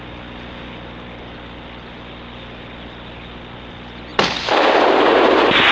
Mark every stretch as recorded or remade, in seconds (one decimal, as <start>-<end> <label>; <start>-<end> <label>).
0.0-5.7 recorded